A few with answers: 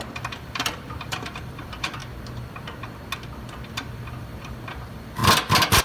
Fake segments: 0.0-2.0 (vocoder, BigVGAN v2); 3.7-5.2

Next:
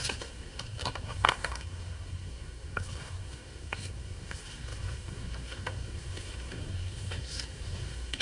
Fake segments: 0.0-8.2 (codec, SNAC)

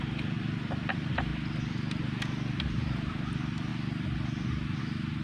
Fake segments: 0.0-1.3 (vocoder, BigVGAN v2); 2.0-3.7; 4.8-5.2